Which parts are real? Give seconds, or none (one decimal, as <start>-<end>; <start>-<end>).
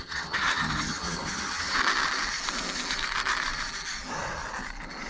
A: 1.8-5.1